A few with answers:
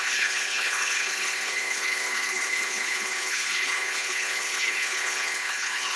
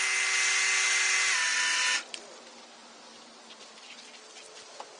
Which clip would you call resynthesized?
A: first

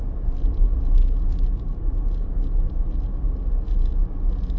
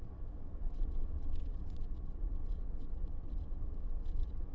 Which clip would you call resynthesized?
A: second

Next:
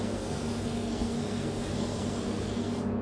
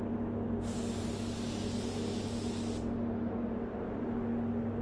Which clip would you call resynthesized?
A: first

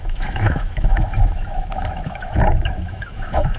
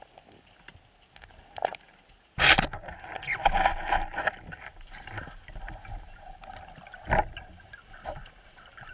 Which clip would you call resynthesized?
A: first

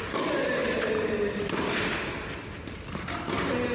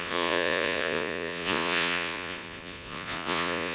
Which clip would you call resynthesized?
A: second